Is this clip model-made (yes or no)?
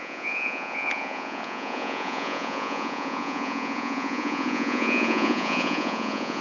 yes